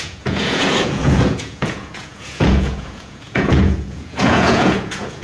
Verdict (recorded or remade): remade